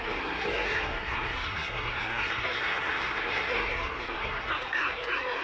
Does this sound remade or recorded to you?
remade